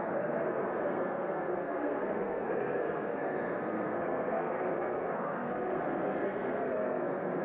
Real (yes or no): no